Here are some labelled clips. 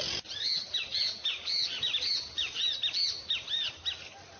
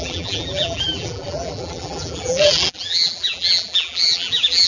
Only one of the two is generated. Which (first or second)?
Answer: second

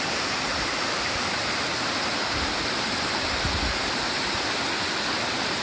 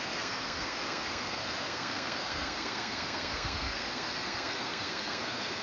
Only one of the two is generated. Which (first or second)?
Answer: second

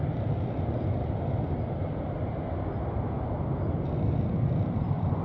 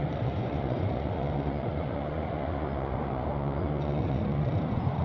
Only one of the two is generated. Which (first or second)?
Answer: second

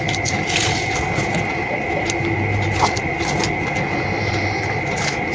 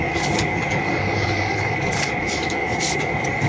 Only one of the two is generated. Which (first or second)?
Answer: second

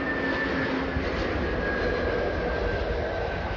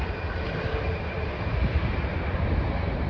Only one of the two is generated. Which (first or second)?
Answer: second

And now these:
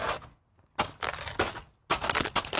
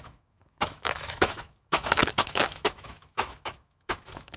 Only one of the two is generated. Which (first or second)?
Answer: second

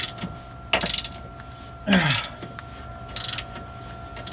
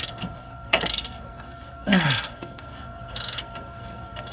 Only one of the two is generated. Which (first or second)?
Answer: second